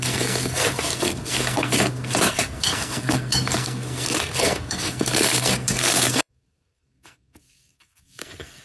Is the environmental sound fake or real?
fake